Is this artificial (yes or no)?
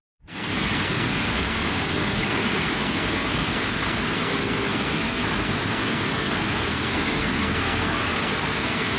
yes